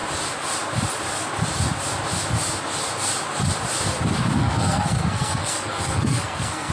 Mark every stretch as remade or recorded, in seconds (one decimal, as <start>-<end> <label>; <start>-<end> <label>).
0.0-4.4 recorded; 4.4-6.7 remade